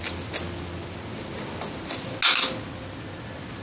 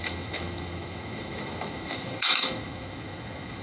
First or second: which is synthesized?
second